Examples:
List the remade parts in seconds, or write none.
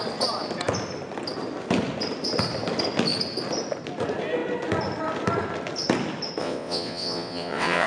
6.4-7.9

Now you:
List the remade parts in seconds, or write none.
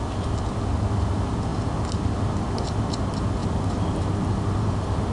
none